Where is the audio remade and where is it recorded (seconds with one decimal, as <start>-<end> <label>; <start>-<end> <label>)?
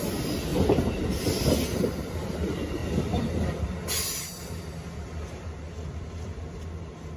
0.0-0.5 remade; 0.5-1.9 recorded; 1.9-2.8 remade; 2.8-7.2 recorded